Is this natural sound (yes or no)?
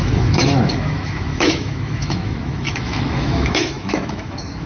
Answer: no